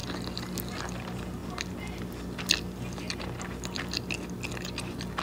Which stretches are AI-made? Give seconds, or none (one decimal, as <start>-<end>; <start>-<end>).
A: none